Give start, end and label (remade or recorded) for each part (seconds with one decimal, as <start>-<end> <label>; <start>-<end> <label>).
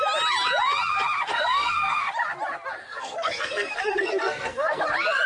0.0-1.3 recorded; 1.3-2.1 remade; 2.1-2.8 recorded; 2.8-4.8 remade; 4.8-5.3 recorded